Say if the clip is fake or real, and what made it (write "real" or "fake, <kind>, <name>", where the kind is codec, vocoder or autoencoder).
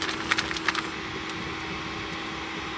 real